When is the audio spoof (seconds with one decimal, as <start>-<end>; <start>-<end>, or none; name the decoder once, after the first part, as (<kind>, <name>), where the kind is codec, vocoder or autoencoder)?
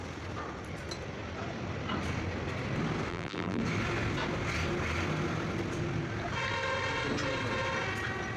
3.1-3.6 (vocoder, BigVGAN v2)